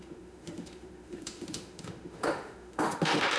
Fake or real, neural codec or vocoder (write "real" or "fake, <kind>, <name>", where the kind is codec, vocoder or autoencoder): fake, autoencoder, DAC-VAE